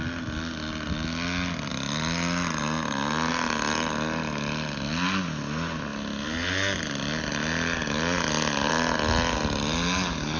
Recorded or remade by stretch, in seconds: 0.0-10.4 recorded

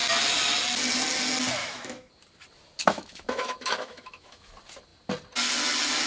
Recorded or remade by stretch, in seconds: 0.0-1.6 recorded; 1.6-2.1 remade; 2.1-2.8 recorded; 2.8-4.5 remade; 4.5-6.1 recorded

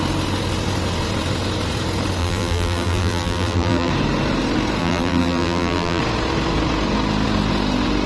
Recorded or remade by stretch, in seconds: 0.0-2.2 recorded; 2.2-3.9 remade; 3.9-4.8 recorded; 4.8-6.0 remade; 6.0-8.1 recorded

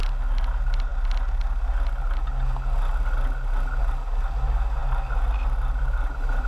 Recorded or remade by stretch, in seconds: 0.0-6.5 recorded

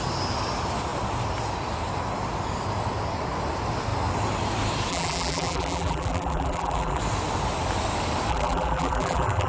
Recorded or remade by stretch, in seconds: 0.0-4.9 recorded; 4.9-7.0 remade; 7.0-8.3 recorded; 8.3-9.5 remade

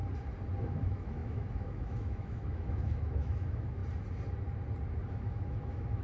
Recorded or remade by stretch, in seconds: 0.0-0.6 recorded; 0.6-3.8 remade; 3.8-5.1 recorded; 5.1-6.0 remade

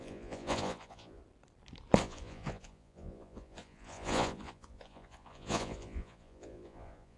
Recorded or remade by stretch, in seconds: 0.0-1.2 remade; 1.2-2.0 recorded; 2.0-7.2 remade

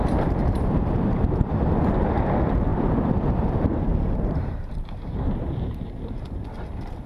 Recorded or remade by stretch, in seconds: 0.0-0.4 recorded; 0.4-1.6 remade; 1.6-2.7 recorded; 2.7-6.1 remade; 6.1-7.1 recorded